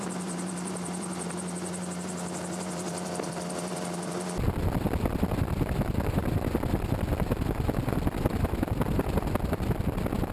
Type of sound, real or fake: fake